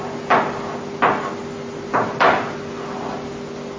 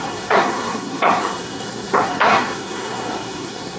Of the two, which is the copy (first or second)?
second